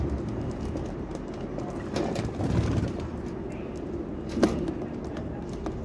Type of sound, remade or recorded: recorded